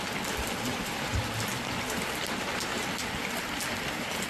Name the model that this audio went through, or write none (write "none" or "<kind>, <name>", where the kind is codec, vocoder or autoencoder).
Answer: none